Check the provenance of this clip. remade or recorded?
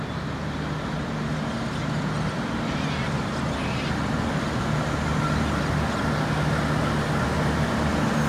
recorded